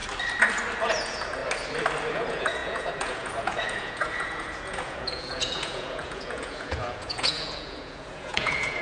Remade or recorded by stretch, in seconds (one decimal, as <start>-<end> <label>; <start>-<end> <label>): 0.0-0.8 recorded; 0.8-1.4 remade; 1.4-2.1 recorded; 2.1-8.8 remade